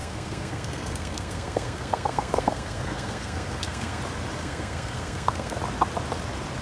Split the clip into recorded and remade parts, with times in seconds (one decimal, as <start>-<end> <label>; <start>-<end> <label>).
0.0-4.0 remade; 4.0-4.4 recorded; 4.4-5.6 remade; 5.6-6.6 recorded